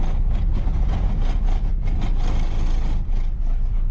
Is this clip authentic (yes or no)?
yes